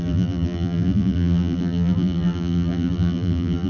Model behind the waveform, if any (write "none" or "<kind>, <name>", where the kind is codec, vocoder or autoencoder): vocoder, BigVGAN v2